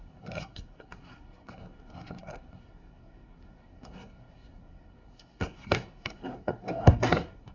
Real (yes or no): no